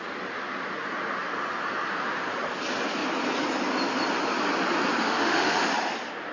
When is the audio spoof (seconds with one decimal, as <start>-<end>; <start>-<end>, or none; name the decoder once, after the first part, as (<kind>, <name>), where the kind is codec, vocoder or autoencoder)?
5.0-5.6 (autoencoder, DAC-VAE)